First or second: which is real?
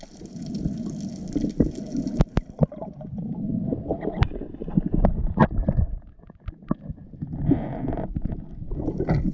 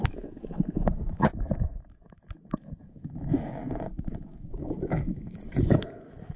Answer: first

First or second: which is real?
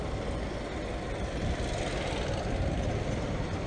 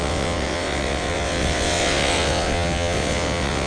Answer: first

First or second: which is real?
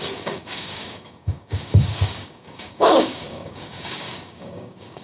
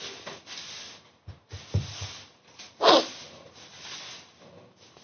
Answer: second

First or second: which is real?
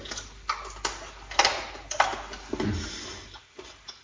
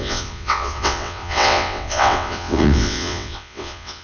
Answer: first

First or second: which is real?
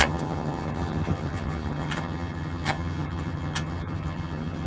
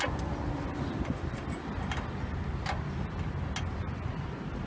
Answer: second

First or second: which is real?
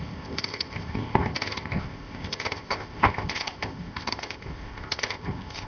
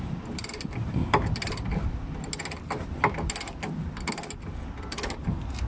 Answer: second